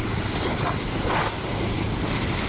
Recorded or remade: recorded